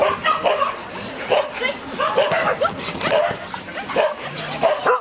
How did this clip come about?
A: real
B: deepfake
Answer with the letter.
B